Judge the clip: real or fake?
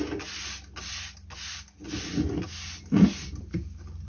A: real